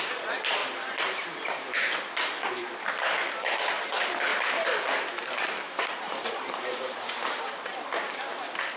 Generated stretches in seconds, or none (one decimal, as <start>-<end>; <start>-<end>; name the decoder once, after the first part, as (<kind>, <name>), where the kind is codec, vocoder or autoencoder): 0.6-2.9 (vocoder, BigVGAN v2); 4.3-7.4